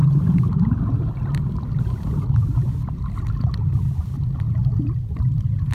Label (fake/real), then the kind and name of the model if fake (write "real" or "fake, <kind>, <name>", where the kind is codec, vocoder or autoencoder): real